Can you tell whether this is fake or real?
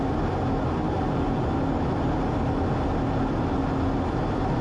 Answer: real